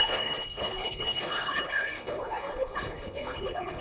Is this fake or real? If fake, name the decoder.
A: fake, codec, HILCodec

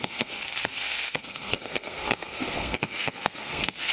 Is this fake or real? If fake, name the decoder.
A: fake, codec, SNAC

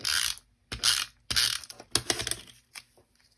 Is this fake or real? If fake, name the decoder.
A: real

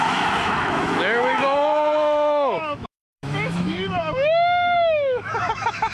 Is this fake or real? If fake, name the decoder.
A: fake, autoencoder, DAC-VAE